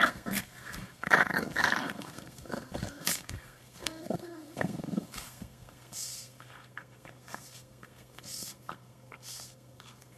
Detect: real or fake fake